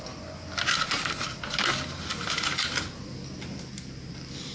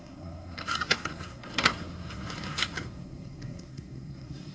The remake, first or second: second